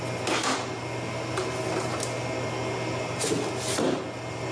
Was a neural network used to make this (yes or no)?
no